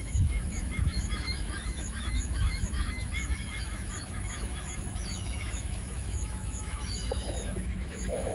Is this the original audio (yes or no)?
no